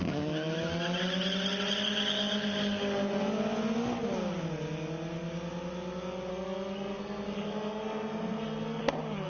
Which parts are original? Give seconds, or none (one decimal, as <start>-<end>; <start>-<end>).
0.0-6.3; 8.8-9.3